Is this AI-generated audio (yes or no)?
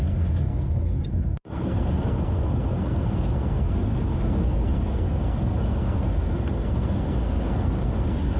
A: yes